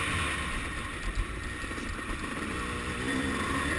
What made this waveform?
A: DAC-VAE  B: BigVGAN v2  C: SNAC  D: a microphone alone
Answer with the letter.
D